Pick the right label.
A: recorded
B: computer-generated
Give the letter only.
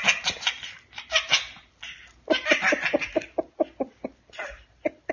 A